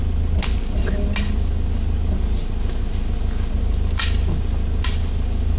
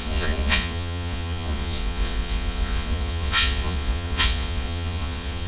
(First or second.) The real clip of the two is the first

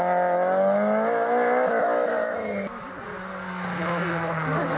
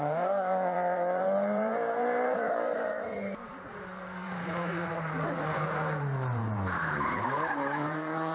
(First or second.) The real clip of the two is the first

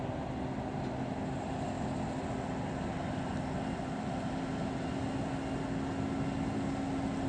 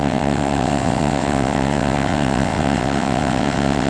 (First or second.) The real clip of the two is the first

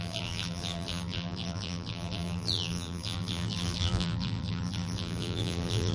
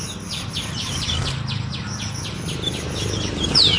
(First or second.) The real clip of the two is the second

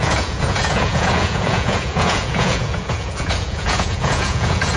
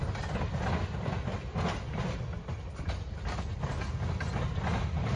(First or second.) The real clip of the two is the second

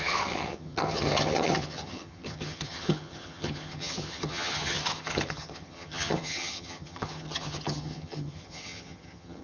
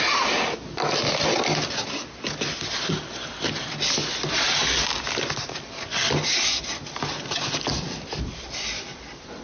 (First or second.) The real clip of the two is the second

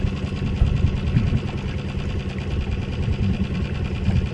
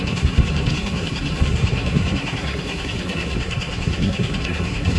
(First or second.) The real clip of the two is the first